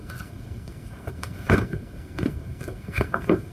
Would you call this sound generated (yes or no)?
yes